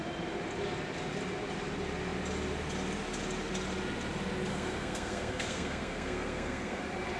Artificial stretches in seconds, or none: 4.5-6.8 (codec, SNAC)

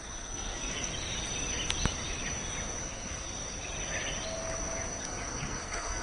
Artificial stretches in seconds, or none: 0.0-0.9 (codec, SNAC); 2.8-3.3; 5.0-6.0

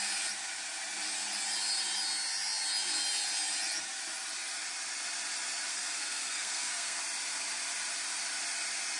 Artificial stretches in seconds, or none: 5.7-7.0 (codec, SNAC)

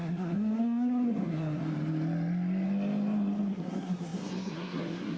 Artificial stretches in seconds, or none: 0.0-1.6 (codec, SNAC); 3.5-5.2